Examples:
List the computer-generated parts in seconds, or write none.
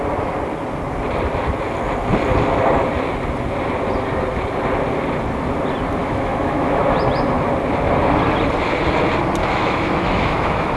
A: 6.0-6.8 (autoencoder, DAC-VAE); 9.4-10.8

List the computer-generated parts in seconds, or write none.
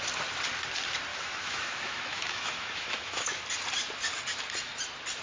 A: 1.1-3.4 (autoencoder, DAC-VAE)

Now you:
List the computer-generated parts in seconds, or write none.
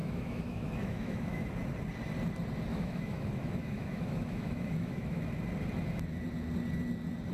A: 0.0-1.5 (autoencoder, DAC-VAE); 2.7-5.2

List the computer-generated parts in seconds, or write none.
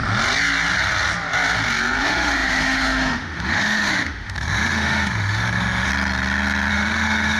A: 2.0-5.9 (autoencoder, DAC-VAE); 6.7-7.4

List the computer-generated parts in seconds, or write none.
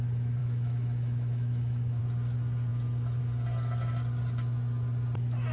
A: 0.4-2.0 (autoencoder, DAC-VAE)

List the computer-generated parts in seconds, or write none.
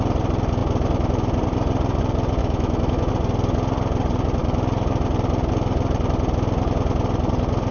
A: 2.4-3.1 (autoencoder, DAC-VAE)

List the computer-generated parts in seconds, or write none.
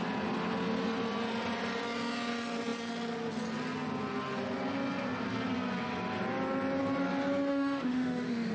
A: 7.5-8.5 (autoencoder, DAC-VAE)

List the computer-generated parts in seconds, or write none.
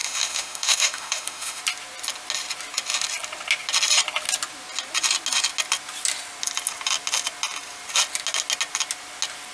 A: 0.0-1.6 (autoencoder, DAC-VAE)